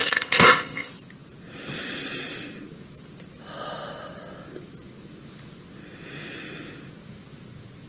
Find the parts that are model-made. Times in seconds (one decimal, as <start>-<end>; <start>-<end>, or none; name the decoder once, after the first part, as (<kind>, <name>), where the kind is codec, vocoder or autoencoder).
0.0-0.9 (codec, ZipCodec)